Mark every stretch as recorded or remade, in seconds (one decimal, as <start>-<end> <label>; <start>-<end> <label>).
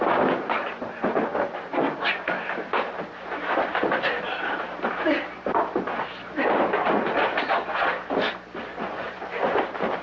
0.0-8.7 recorded; 8.7-9.3 remade; 9.3-10.0 recorded